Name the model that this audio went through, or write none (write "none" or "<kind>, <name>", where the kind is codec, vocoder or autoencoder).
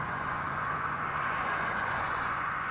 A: vocoder, Vocos